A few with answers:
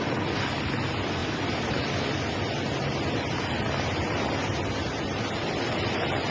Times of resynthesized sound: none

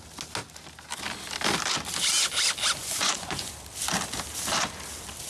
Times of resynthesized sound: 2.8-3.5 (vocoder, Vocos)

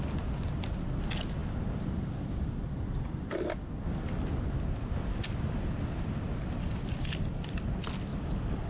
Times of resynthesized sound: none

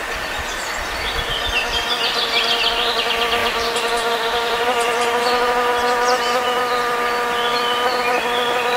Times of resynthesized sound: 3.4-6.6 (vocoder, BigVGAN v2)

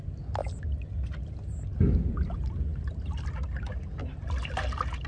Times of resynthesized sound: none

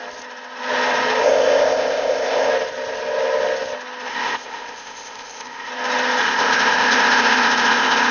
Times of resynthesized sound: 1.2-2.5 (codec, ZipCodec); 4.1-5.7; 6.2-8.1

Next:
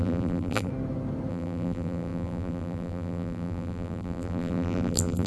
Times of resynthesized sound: 0.0-0.7 (vocoder, BigVGAN v2); 1.3-5.3

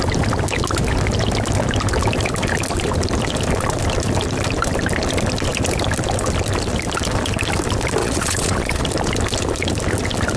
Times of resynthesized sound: 8.0-8.8 (vocoder, Vocos)